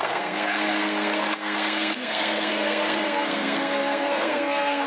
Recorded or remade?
remade